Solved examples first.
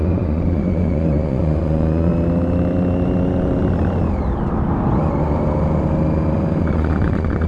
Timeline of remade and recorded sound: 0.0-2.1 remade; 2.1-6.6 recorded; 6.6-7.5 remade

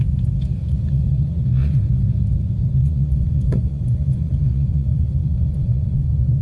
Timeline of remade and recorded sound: 0.0-0.6 recorded; 0.6-1.8 remade; 1.8-2.8 recorded; 2.8-6.4 remade

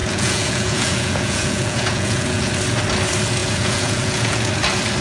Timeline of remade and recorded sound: 0.0-2.5 remade; 2.5-3.4 recorded; 3.4-4.5 remade; 4.5-5.0 recorded

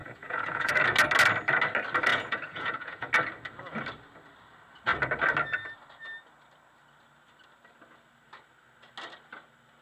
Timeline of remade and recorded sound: 0.0-0.7 remade; 0.7-2.1 recorded; 2.1-3.1 remade; 3.1-9.8 recorded